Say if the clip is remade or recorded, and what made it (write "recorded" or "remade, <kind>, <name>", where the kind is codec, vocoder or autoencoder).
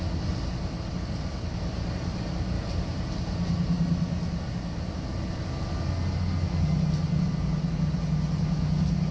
recorded